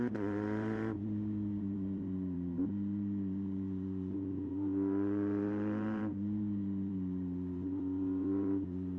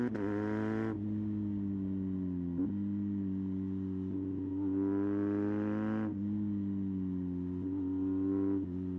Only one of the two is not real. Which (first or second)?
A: first